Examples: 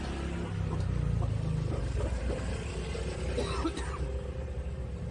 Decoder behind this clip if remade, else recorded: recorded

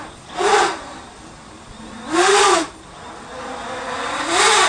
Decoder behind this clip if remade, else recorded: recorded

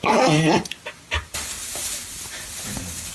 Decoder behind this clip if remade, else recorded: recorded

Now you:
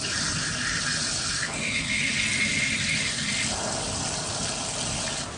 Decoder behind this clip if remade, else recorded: recorded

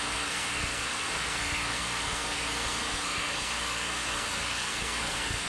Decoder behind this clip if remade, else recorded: remade, codec, SNAC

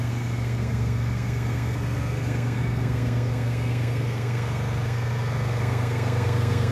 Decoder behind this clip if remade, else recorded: remade, codec, SNAC